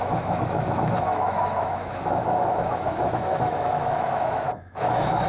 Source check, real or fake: fake